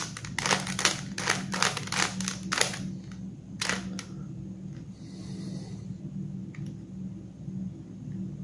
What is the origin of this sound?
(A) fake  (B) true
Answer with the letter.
B